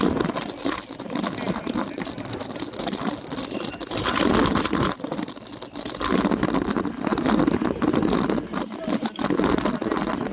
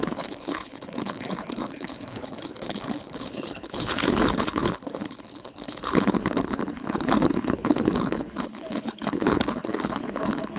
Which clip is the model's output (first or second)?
second